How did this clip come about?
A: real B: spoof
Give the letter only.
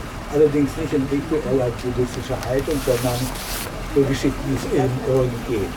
A